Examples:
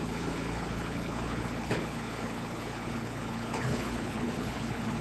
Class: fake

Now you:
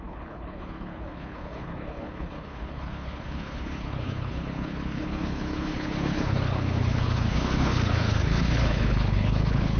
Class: fake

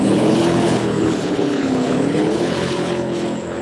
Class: fake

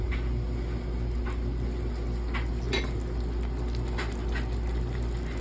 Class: real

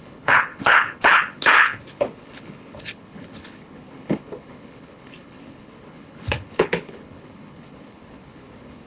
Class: fake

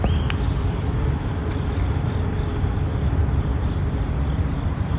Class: real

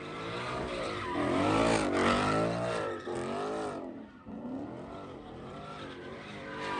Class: real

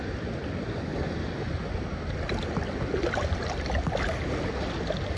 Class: real